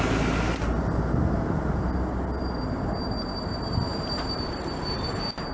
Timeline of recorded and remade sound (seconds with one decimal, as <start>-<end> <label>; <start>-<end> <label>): 0.0-5.5 recorded